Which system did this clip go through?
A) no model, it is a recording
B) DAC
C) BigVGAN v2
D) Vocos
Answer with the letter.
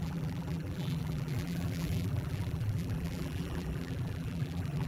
C